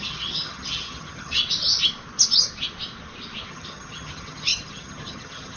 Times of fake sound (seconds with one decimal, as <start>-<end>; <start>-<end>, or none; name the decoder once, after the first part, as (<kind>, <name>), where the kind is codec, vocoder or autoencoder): 0.0-1.4 (vocoder, HiFi-GAN); 3.5-5.6